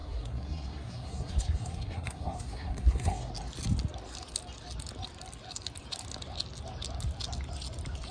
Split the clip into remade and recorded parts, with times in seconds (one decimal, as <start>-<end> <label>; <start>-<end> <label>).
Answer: 0.0-3.3 remade; 3.3-8.1 recorded